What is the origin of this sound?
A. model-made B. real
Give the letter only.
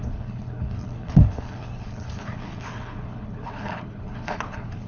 A